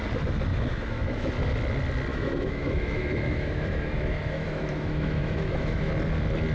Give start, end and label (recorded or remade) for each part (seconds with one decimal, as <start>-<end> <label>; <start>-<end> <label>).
0.0-0.5 recorded; 0.5-1.3 remade; 1.3-2.1 recorded; 2.1-5.9 remade; 5.9-6.5 recorded